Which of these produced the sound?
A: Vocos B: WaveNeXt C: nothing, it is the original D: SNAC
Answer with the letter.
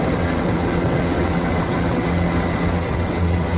B